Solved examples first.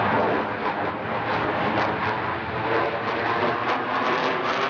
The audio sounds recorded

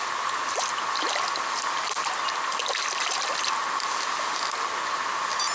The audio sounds recorded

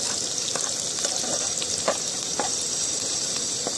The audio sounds remade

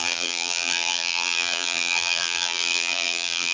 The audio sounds remade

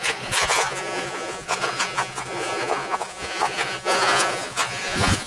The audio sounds remade